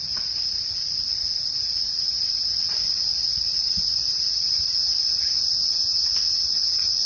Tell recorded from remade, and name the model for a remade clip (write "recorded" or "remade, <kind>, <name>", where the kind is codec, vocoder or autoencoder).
remade, vocoder, Vocos